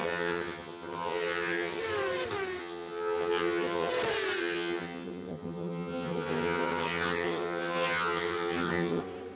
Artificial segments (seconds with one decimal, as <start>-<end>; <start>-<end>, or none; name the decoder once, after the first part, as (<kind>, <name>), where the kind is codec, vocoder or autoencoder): 0.0-1.8 (vocoder, HiFi-GAN); 2.6-3.9; 4.4-9.0